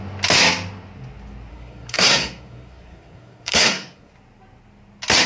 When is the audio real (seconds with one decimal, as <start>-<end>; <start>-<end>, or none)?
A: 0.0-1.5; 4.1-5.3